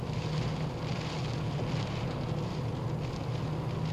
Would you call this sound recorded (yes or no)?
yes